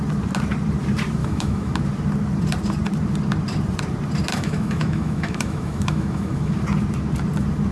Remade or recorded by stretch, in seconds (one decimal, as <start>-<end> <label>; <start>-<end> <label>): 0.0-1.2 recorded; 1.2-1.7 remade; 1.7-4.3 recorded; 4.3-6.5 remade; 6.5-7.7 recorded